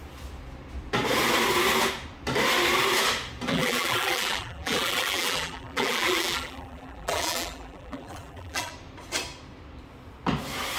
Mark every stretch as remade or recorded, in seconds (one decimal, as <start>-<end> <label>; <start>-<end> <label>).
0.0-3.5 recorded; 3.5-8.7 remade; 8.7-10.8 recorded